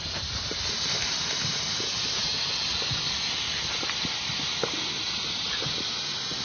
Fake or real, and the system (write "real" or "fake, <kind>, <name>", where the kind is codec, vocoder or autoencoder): real